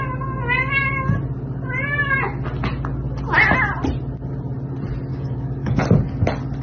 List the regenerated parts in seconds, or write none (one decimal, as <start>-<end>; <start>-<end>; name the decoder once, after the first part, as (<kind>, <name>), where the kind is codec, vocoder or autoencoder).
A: 5.1-5.8 (codec, DAC)

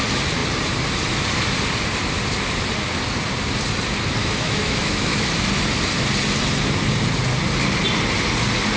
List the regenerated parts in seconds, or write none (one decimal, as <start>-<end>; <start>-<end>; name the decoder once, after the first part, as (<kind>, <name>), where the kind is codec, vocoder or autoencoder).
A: 4.2-5.2 (autoencoder, DAC-VAE)